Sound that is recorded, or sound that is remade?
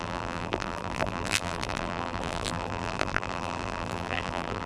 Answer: remade